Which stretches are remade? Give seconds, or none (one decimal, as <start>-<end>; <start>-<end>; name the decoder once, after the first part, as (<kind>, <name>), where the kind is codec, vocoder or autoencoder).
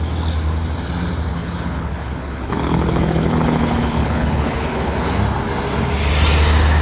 1.3-5.2 (codec, HILCodec)